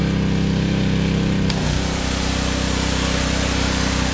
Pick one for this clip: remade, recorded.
recorded